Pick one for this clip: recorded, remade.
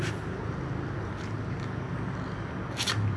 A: recorded